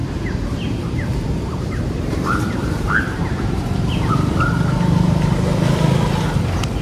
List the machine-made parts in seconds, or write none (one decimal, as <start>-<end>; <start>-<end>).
0.0-4.1